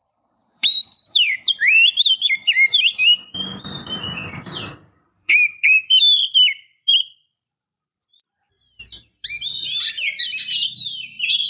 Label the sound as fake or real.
fake